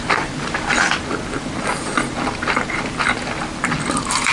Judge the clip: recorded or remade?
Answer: recorded